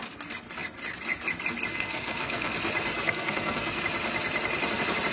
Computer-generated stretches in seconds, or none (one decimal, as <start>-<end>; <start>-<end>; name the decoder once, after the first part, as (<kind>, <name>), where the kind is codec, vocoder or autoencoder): 1.7-2.5 (codec, SNAC); 2.9-3.8